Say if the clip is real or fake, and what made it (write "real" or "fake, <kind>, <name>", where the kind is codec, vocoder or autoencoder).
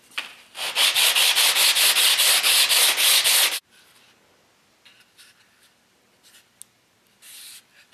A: real